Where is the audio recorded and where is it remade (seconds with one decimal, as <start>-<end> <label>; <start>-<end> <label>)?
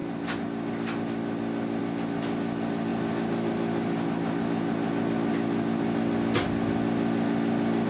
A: 0.0-7.9 recorded